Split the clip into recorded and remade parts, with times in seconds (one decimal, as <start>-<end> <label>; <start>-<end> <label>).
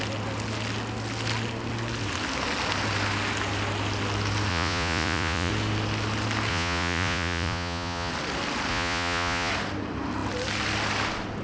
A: 0.0-4.5 recorded; 4.5-5.5 remade; 5.5-6.5 recorded; 6.5-8.1 remade; 8.1-8.7 recorded; 8.7-9.5 remade; 9.5-11.4 recorded